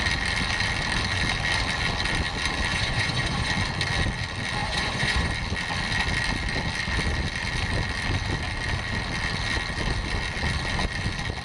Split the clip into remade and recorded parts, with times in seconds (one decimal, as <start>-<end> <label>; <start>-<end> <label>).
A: 0.0-2.7 recorded; 2.7-3.5 remade; 3.5-4.6 recorded; 4.6-5.3 remade; 5.3-11.4 recorded